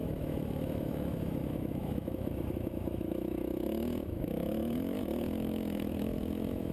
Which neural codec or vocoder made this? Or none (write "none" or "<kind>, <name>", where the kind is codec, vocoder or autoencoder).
autoencoder, DAC-VAE